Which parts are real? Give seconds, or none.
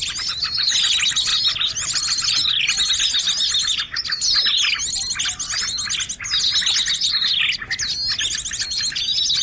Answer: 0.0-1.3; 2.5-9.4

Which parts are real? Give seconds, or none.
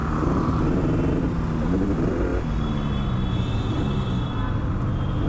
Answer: 0.0-5.3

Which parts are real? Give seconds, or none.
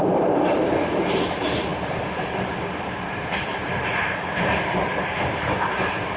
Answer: none